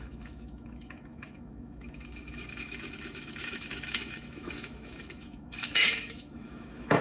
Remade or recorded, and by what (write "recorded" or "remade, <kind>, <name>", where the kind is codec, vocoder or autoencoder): remade, autoencoder, DAC-VAE